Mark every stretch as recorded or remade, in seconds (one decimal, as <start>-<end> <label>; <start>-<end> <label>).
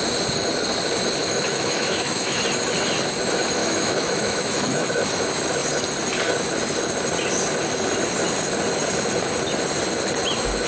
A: 0.0-1.2 recorded; 1.2-2.4 remade; 2.4-3.6 recorded; 3.6-4.9 remade; 4.9-10.7 recorded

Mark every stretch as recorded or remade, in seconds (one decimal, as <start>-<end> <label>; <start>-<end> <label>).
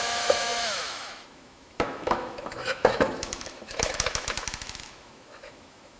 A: 0.0-6.0 remade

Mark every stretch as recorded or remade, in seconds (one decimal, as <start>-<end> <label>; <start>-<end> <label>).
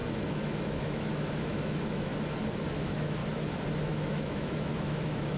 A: 0.0-2.1 remade; 2.1-2.7 recorded; 2.7-3.2 remade; 3.2-3.8 recorded; 3.8-5.4 remade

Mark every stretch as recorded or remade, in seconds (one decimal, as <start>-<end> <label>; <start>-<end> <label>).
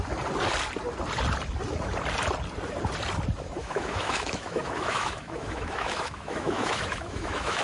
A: 0.0-3.6 recorded; 3.6-7.6 remade